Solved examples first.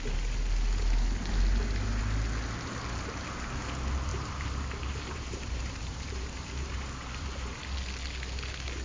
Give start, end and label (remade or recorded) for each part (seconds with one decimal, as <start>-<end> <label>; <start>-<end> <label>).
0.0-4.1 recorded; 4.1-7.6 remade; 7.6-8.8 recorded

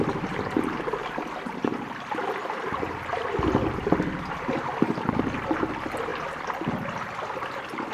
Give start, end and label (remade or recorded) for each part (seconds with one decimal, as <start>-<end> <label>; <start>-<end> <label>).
0.0-7.9 recorded

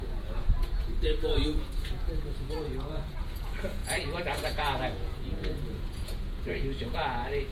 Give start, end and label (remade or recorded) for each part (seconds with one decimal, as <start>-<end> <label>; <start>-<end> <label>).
0.0-7.5 remade

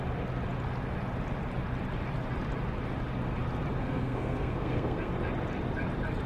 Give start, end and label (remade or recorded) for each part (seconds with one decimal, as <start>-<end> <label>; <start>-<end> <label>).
0.0-3.8 recorded; 3.8-5.1 remade; 5.1-6.3 recorded